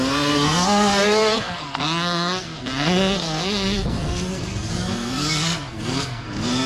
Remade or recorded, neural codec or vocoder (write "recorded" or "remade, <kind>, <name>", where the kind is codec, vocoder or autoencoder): remade, codec, SNAC